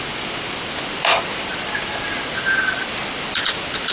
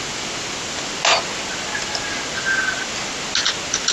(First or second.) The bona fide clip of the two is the second